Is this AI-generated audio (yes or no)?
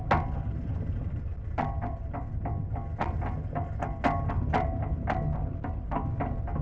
no